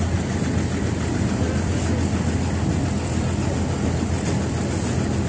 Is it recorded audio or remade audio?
recorded